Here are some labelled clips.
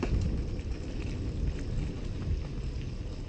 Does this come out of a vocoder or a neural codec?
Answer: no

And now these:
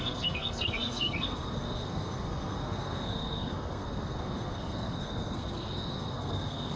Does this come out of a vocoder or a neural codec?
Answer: yes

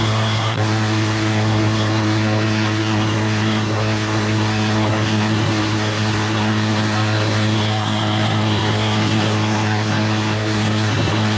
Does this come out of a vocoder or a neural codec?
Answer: yes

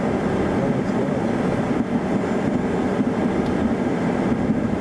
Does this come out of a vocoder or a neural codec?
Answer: no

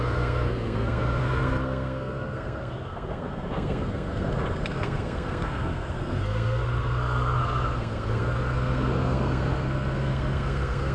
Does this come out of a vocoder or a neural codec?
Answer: yes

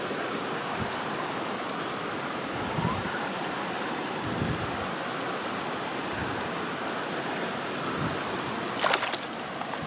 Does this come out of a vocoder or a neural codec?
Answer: no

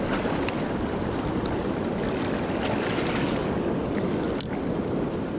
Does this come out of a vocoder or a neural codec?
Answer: no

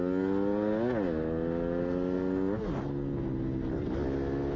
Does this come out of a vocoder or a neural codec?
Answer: no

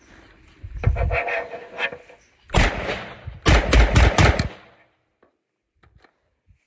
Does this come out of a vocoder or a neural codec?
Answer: no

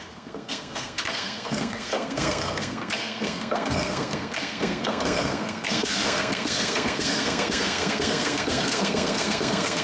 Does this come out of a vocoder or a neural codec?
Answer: yes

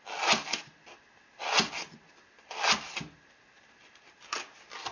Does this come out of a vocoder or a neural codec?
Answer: no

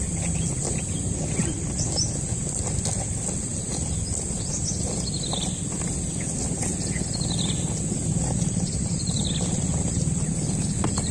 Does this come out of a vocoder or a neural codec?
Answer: no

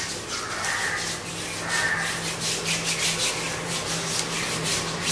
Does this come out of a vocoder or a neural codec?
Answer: no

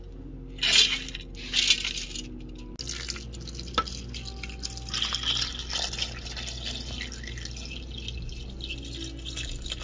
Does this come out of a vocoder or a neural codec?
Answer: no